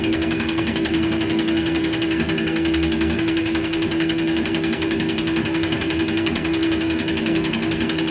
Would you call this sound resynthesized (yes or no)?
yes